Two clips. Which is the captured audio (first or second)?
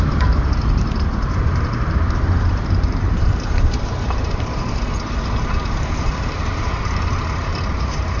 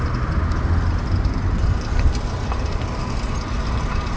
second